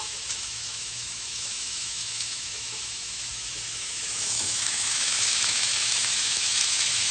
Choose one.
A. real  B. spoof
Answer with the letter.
B